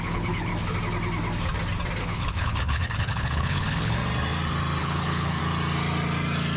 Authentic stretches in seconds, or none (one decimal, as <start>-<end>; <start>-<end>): 0.5-2.0; 4.0-4.8; 5.4-6.6